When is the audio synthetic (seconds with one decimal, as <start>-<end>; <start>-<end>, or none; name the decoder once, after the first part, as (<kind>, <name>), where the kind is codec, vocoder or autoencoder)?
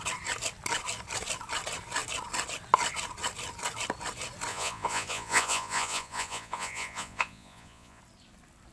4.5-8.0 (vocoder, Vocos)